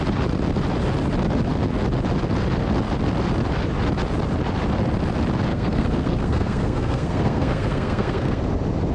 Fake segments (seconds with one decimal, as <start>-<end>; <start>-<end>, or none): 5.5-8.4